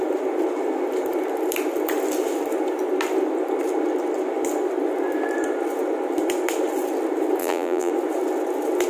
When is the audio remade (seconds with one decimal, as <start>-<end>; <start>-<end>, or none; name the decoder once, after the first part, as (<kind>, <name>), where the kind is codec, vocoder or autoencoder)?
7.4-7.9 (vocoder, BigVGAN v2)